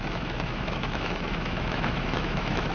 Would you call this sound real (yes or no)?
no